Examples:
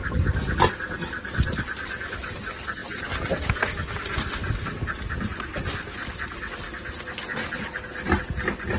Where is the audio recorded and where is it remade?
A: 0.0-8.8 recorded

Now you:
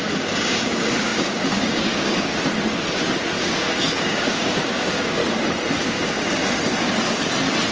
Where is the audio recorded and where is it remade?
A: 0.0-2.3 remade; 2.3-3.4 recorded; 3.4-5.2 remade; 5.2-5.8 recorded; 5.8-6.4 remade; 6.4-7.7 recorded

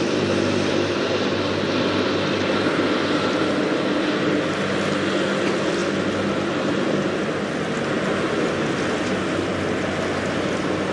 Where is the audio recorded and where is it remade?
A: 0.0-10.9 recorded

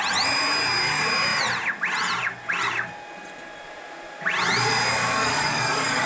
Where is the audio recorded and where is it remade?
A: 0.0-5.2 recorded; 5.2-6.1 remade

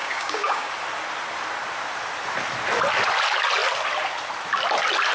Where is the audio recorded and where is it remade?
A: 0.0-0.7 remade; 0.7-5.1 recorded